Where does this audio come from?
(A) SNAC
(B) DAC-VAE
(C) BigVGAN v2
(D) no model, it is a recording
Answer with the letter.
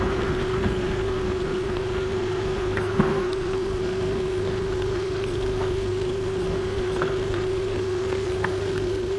A